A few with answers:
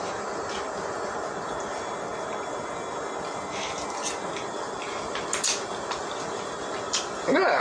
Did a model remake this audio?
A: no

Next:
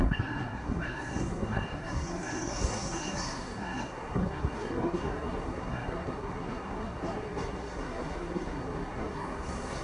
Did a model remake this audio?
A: yes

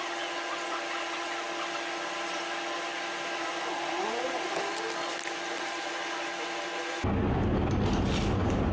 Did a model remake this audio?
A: no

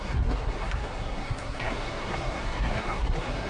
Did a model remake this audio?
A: yes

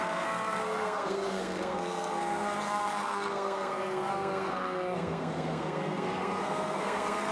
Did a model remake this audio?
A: yes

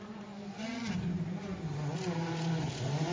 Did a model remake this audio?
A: no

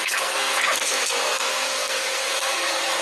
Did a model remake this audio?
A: yes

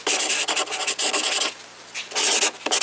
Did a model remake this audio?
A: no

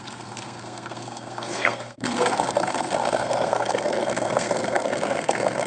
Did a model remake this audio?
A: yes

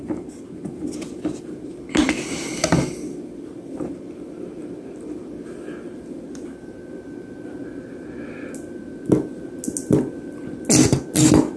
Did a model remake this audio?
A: no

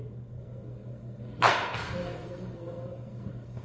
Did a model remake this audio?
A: yes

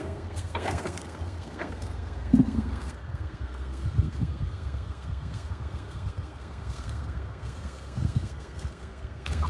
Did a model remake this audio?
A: yes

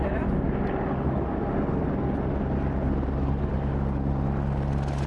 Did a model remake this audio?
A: no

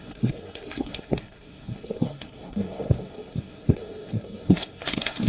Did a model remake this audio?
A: yes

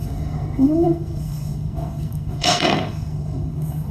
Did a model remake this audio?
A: yes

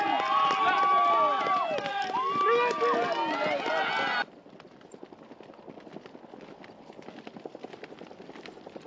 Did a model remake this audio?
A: no